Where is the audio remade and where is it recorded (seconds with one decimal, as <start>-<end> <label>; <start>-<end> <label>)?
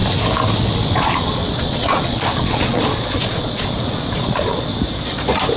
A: 0.0-0.9 recorded; 0.9-4.7 remade; 4.7-5.6 recorded